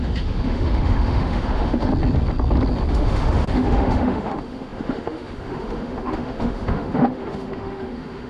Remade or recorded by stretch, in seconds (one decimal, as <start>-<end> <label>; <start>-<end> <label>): 0.0-1.9 remade; 1.9-2.9 recorded; 2.9-8.3 remade